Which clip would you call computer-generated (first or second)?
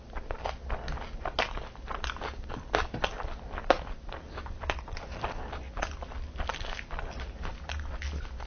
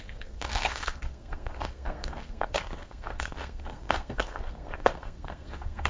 second